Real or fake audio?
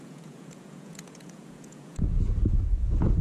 fake